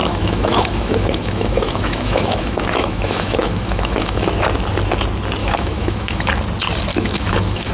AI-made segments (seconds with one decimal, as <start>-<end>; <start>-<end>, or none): 0.0-4.3; 5.4-6.3; 6.9-7.7